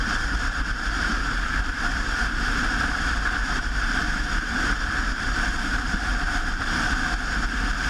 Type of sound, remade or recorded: remade